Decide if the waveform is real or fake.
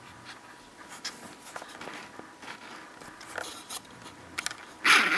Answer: real